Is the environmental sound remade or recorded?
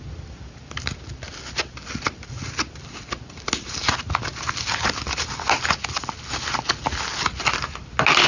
recorded